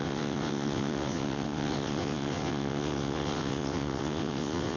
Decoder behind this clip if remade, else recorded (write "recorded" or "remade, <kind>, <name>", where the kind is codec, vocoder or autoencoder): remade, vocoder, WaveNeXt